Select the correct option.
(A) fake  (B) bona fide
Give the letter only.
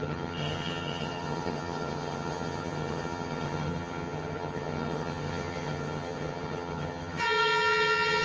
A